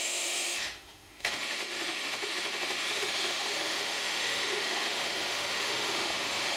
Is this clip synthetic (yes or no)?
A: yes